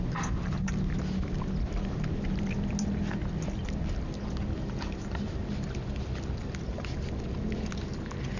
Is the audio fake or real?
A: real